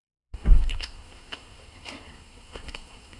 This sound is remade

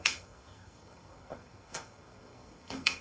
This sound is remade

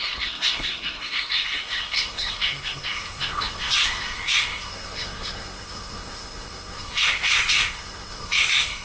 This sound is remade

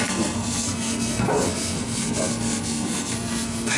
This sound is remade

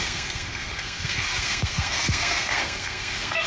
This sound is remade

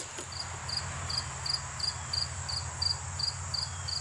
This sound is recorded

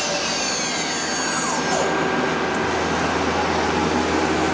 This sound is recorded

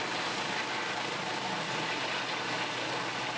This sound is recorded